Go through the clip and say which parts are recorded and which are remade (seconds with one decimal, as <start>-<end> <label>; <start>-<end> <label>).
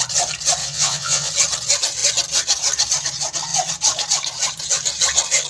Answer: 0.0-0.6 recorded; 0.6-1.3 remade; 1.3-5.5 recorded